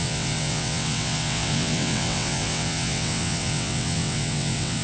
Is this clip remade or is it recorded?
remade